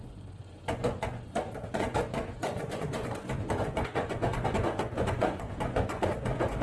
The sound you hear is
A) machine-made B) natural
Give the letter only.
A